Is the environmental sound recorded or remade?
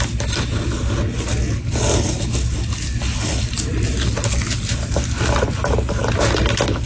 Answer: recorded